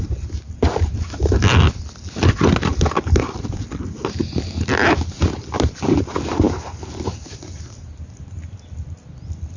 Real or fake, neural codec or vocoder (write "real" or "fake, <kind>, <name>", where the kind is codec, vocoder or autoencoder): real